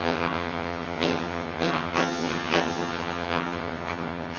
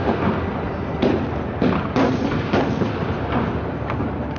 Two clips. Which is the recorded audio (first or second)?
second